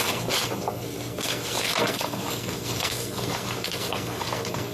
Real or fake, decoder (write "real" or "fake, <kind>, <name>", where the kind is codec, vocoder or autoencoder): fake, codec, SNAC